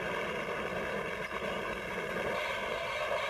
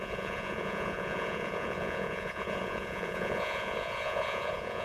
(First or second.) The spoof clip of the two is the second